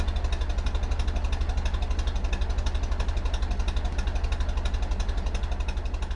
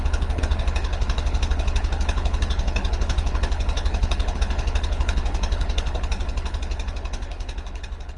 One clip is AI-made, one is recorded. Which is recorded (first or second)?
first